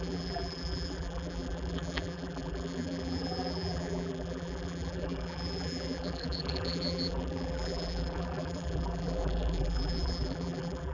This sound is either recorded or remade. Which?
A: remade